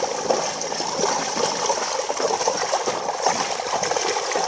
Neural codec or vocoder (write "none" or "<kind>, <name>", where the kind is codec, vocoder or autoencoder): none